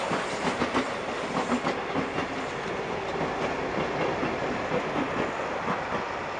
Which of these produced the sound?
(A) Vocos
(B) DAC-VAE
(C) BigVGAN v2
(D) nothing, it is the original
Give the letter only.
D